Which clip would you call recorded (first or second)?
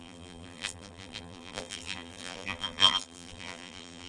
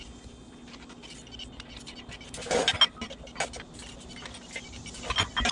second